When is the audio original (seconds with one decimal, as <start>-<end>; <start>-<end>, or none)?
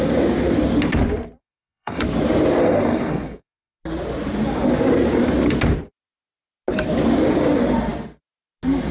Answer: 0.0-1.4; 2.0-2.6; 3.8-8.9